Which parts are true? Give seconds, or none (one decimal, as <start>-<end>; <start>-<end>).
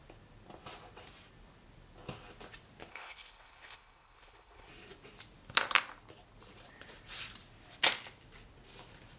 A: 0.0-2.9; 4.7-9.2